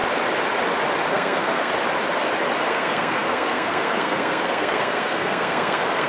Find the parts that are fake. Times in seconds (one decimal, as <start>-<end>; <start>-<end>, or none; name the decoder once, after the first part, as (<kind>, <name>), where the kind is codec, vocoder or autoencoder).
1.1-1.7 (codec, SNAC); 2.7-6.1